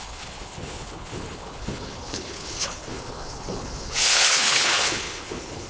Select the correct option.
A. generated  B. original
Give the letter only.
A